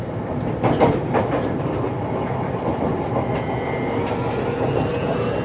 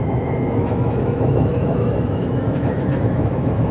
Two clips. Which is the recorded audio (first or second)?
first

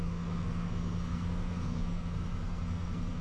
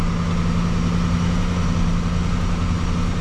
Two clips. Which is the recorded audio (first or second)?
second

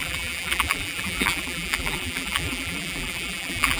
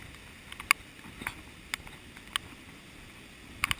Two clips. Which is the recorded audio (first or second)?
second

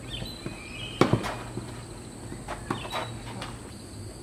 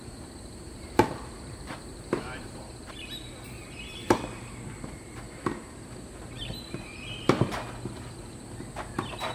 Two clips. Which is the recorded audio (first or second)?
first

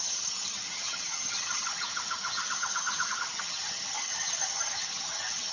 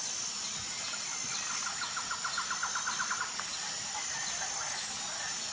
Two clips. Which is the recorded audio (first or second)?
second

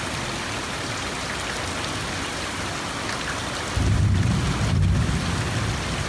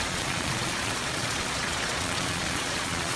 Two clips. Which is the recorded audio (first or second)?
first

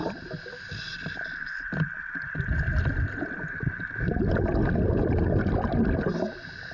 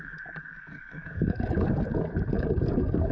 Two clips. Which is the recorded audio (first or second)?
first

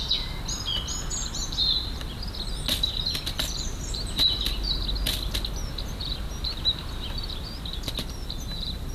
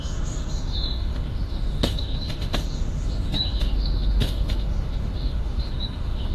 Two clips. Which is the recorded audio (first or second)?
first